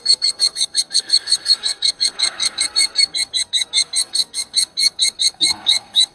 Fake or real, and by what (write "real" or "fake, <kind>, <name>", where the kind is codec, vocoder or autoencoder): fake, codec, SNAC